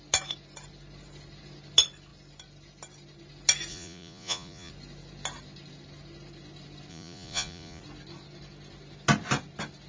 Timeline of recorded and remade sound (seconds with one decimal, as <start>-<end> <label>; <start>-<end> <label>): 0.0-3.7 recorded; 3.7-4.7 remade; 4.7-6.9 recorded; 6.9-7.8 remade; 7.8-9.9 recorded